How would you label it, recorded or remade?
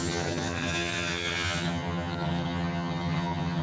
remade